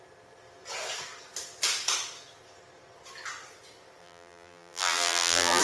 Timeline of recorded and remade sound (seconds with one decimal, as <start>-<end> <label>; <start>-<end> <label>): 0.0-4.0 recorded; 4.0-5.6 remade

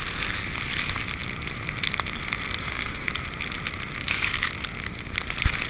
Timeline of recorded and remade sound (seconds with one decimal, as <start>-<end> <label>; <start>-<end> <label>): 0.0-2.6 recorded; 2.6-3.1 remade; 3.1-5.7 recorded

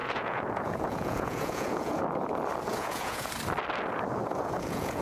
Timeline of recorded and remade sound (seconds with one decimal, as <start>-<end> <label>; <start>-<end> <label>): 0.0-2.0 remade; 2.0-2.7 recorded; 2.7-3.3 remade; 3.3-4.2 recorded; 4.2-5.0 remade

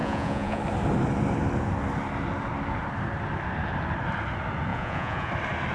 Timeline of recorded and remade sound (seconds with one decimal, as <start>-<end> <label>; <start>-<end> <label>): 0.0-0.6 remade; 0.6-4.7 recorded; 4.7-5.3 remade; 5.3-5.7 recorded

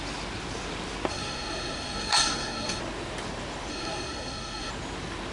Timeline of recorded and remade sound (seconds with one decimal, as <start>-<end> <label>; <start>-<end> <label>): 0.0-1.1 recorded; 1.1-2.8 remade; 2.8-3.7 recorded; 3.7-4.7 remade; 4.7-5.3 recorded

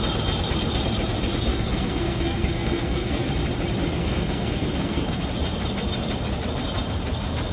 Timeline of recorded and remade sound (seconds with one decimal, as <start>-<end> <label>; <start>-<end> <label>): 0.0-1.5 recorded; 1.5-3.3 remade; 3.3-4.0 recorded; 4.0-5.2 remade; 5.2-7.5 recorded

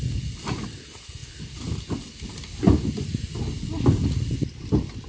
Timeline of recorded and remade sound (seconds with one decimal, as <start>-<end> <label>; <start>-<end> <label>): 0.0-5.1 recorded

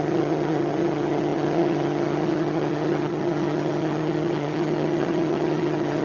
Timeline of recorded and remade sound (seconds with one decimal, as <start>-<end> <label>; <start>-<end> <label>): 0.0-6.0 remade